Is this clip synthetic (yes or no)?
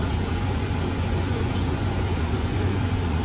yes